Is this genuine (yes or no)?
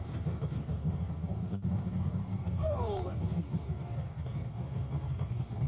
no